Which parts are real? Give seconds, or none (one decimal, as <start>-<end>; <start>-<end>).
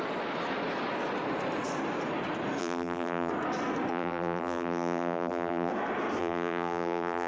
0.0-2.6; 3.3-3.9; 5.7-6.2